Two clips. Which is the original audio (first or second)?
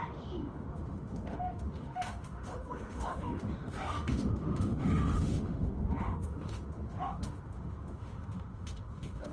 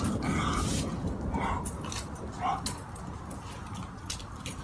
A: second